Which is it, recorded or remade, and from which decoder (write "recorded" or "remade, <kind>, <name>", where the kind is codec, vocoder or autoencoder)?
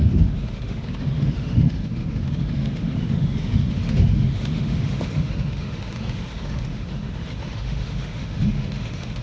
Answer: remade, autoencoder, DAC-VAE